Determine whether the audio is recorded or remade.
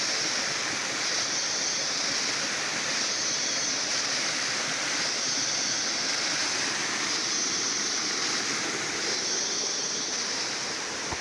recorded